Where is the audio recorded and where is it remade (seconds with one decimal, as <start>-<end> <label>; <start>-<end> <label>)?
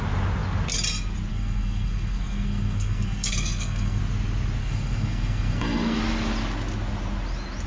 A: 0.0-1.3 recorded; 1.3-4.0 remade; 4.0-4.6 recorded; 4.6-6.0 remade; 6.0-7.7 recorded